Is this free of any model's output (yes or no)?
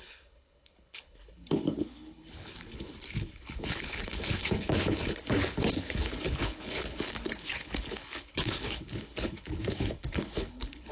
no